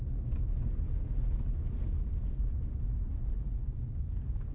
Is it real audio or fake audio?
real